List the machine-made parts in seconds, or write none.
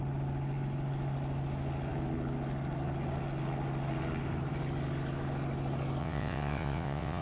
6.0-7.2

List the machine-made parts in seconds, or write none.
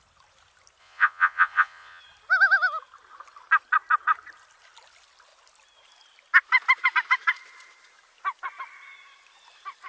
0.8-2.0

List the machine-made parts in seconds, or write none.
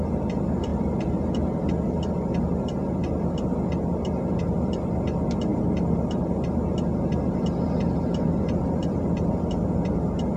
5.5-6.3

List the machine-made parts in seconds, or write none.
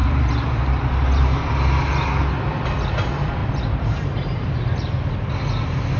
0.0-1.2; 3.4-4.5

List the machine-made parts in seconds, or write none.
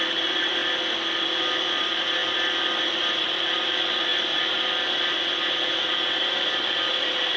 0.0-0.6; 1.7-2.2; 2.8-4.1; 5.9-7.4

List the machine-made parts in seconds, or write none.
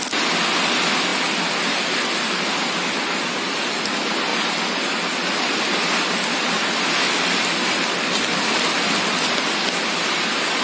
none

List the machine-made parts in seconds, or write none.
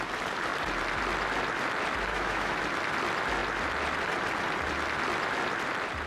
2.1-2.6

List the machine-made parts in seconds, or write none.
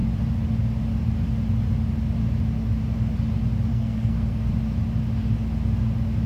3.7-4.5